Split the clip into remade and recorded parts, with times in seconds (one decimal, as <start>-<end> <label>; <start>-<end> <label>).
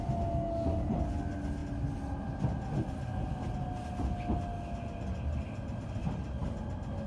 0.0-7.1 recorded